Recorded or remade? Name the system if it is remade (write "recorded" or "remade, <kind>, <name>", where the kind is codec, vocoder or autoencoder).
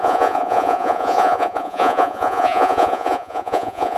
remade, vocoder, Vocos